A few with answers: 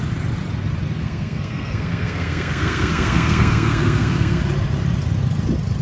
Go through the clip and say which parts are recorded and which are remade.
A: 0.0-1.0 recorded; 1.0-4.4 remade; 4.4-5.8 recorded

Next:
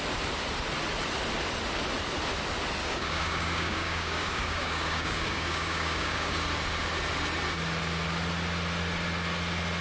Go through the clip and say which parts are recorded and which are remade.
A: 0.0-2.8 recorded; 2.8-6.4 remade; 6.4-9.8 recorded

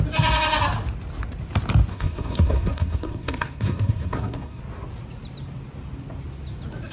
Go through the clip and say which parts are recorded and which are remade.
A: 0.0-1.9 recorded; 1.9-4.6 remade; 4.6-6.9 recorded

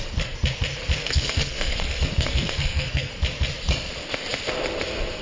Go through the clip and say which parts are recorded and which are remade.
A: 0.0-1.0 recorded; 1.0-3.1 remade; 3.1-5.2 recorded

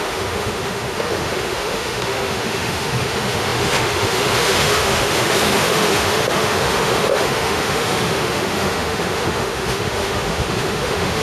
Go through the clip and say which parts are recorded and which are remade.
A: 0.0-11.2 remade

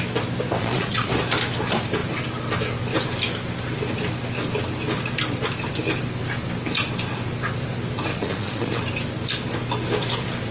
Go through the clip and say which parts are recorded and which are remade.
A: 0.0-0.6 recorded; 0.6-1.1 remade; 1.1-8.1 recorded; 8.1-8.8 remade; 8.8-10.5 recorded